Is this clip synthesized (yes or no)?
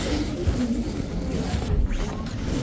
no